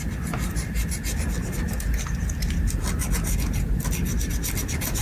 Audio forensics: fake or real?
real